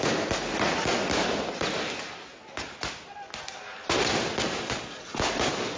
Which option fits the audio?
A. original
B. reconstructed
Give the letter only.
A